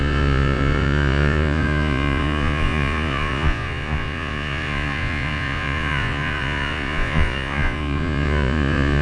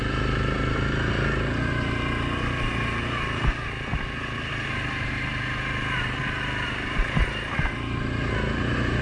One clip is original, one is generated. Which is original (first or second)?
second